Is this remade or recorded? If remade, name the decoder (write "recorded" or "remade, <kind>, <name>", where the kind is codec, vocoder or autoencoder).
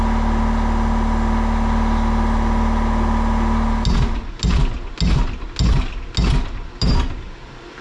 recorded